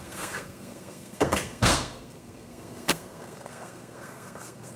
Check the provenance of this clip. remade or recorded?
remade